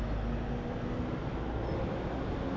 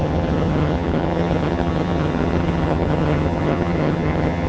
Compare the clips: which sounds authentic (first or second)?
first